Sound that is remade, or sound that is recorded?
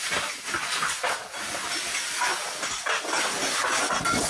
recorded